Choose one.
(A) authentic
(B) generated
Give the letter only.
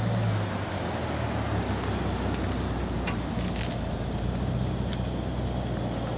A